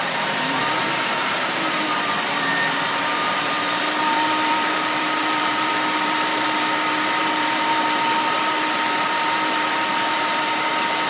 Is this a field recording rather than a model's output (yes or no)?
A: no